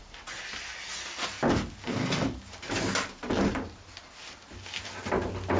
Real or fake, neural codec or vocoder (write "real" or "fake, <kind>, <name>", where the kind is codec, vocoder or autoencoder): real